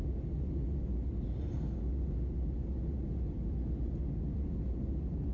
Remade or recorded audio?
recorded